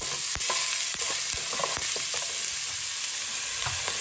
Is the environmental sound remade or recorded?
recorded